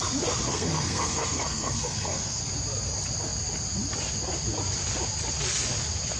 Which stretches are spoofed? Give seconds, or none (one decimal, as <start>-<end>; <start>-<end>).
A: 0.5-2.4